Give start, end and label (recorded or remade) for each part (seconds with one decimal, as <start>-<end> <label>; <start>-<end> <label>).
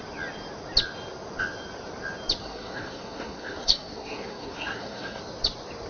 0.0-2.4 recorded; 2.4-5.2 remade; 5.2-5.9 recorded